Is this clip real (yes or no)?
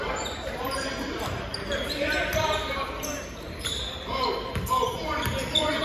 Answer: no